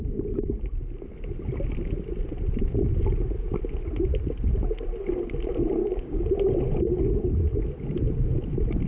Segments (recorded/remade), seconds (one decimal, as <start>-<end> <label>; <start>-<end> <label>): 0.0-5.8 recorded; 5.8-6.3 remade; 6.3-8.9 recorded